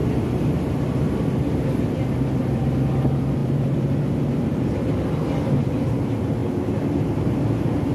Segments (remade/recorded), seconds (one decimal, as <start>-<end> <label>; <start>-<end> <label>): 0.0-0.6 remade; 0.6-3.4 recorded; 3.4-4.0 remade; 4.0-6.4 recorded; 6.4-7.3 remade; 7.3-7.9 recorded